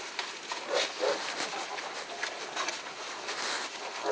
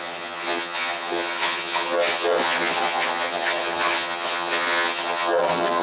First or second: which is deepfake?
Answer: second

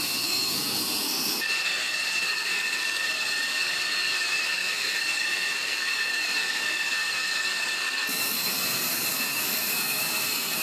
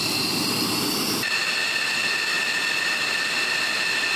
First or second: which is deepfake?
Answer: first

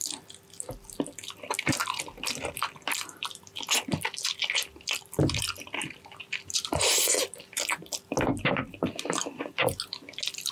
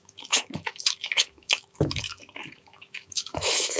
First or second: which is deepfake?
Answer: second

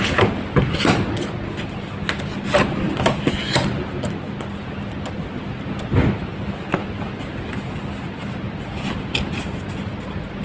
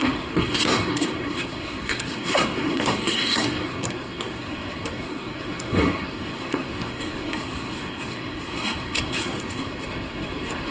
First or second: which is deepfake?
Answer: second